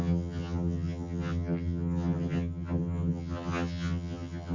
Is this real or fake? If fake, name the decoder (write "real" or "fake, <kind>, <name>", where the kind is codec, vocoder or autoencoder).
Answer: fake, vocoder, HiFi-GAN